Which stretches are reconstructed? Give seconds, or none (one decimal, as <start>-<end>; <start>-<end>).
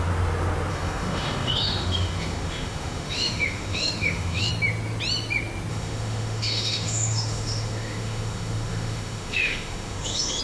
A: 0.7-4.5; 5.7-10.4